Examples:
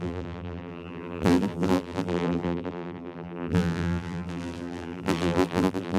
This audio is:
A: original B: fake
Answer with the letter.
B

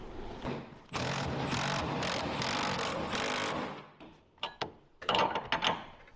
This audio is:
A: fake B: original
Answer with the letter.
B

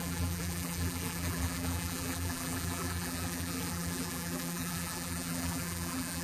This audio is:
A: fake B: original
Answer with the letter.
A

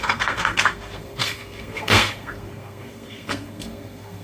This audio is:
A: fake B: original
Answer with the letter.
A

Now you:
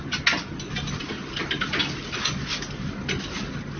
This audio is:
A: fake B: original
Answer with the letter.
B